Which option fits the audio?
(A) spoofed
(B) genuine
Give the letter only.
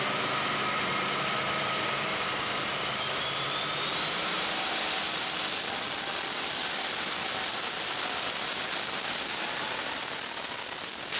B